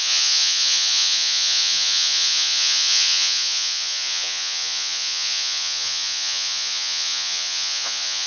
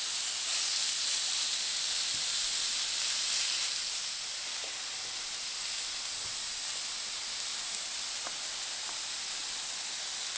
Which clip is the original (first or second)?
second